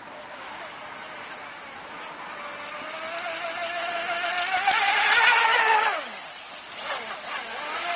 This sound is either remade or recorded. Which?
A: recorded